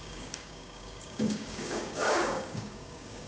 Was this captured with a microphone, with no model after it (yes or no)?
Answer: no